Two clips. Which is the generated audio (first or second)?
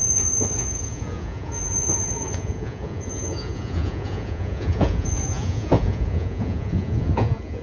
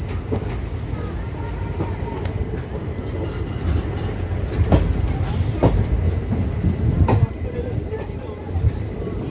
first